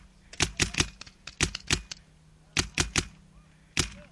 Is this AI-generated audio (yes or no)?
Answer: no